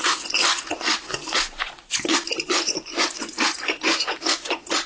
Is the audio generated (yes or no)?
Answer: yes